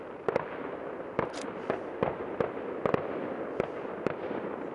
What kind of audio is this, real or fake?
real